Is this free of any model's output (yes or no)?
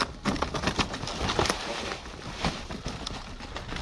yes